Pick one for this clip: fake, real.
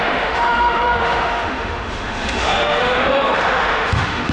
fake